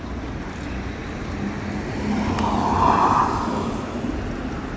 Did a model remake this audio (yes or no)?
no